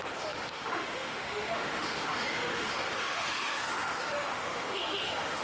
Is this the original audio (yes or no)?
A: no